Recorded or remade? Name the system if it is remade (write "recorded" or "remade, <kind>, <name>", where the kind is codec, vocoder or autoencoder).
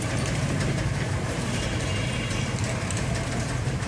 remade, vocoder, BigVGAN v2